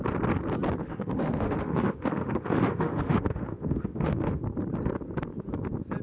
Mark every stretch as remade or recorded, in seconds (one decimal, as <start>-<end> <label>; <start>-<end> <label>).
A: 0.0-0.8 recorded; 0.8-4.4 remade; 4.4-6.0 recorded